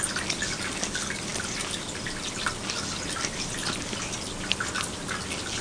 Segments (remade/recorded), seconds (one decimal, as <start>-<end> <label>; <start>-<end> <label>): 0.0-5.6 recorded